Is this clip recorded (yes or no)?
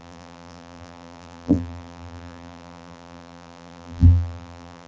no